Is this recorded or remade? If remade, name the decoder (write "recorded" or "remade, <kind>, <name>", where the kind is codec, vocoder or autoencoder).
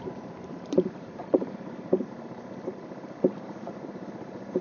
remade, vocoder, BigVGAN v2